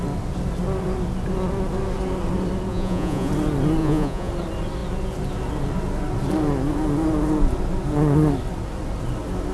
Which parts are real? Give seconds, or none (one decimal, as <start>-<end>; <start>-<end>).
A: 0.0-2.7; 3.3-3.8; 4.3-9.5